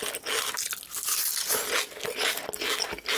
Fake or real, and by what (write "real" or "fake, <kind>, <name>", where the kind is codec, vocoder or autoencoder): real